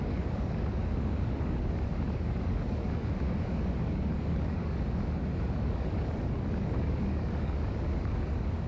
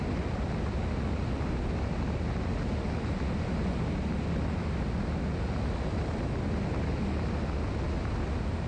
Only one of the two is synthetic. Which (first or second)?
first